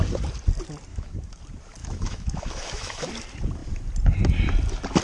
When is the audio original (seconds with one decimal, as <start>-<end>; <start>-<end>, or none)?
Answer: 0.0-0.9; 1.4-1.8; 3.1-5.0